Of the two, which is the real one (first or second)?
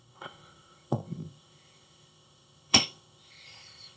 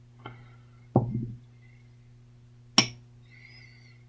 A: second